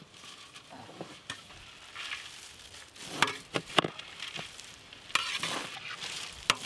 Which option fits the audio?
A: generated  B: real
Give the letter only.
B